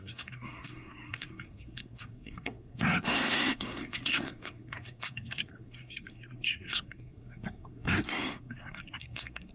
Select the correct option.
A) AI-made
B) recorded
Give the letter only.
A